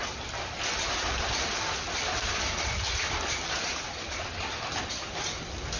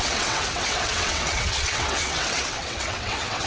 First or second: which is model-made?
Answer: second